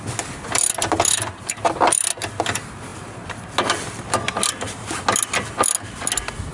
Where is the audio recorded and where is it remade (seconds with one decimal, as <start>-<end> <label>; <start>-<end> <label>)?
0.0-6.5 recorded